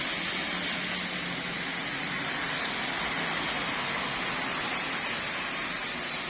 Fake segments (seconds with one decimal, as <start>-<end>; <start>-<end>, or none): none